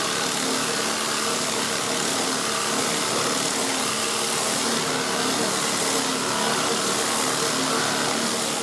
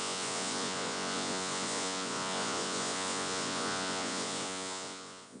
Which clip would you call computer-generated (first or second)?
second